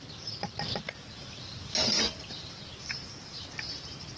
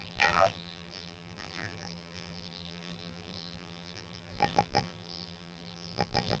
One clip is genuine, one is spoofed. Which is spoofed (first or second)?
second